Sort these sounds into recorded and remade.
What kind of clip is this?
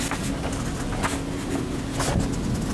recorded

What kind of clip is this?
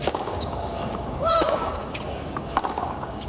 remade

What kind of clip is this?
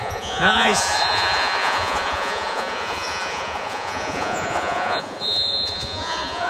remade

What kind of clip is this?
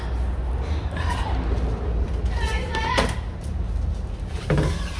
recorded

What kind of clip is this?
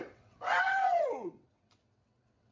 remade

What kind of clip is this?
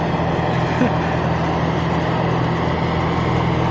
recorded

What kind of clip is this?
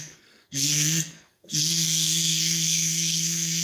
remade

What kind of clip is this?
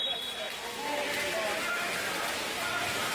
recorded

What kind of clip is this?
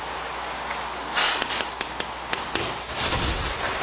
recorded